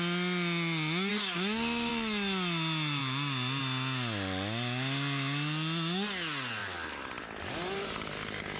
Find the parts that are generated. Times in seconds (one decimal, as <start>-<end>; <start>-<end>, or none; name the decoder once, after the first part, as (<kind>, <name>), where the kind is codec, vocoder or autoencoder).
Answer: 1.1-1.9 (codec, DAC)